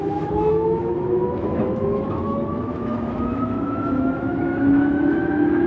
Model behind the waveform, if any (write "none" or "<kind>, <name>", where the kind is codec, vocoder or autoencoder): autoencoder, DAC-VAE